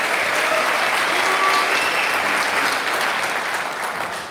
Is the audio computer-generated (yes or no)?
no